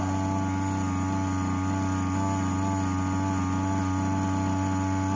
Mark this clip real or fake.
real